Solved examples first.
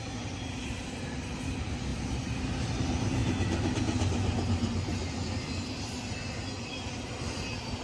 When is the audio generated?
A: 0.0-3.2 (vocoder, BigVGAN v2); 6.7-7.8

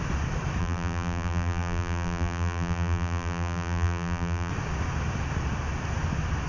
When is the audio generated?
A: 0.6-4.5 (vocoder, BigVGAN v2)